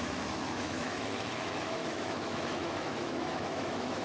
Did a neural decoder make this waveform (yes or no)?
yes